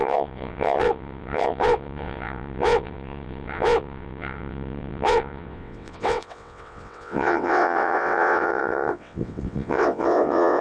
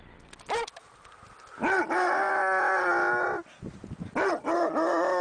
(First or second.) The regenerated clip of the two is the first